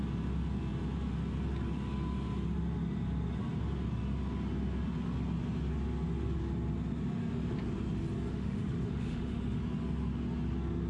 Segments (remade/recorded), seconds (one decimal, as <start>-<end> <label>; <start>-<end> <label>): 0.0-8.3 recorded; 8.3-9.6 remade; 9.6-10.9 recorded